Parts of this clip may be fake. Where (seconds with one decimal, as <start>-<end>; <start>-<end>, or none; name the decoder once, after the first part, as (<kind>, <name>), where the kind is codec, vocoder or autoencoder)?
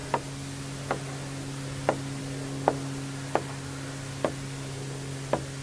none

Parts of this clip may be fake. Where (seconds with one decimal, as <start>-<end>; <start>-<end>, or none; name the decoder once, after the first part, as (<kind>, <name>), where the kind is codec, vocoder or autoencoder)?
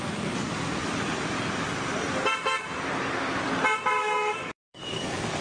0.0-0.8 (codec, DAC); 4.0-5.4